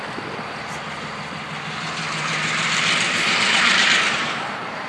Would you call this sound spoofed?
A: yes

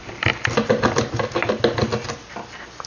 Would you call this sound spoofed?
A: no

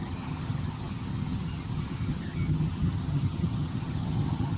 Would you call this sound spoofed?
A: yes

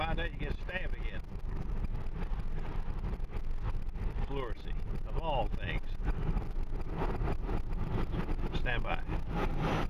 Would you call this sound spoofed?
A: no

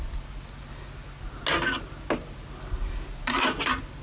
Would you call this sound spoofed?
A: no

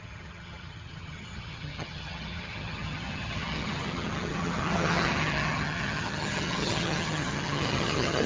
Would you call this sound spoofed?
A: yes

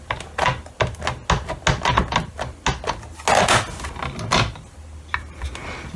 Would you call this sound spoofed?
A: no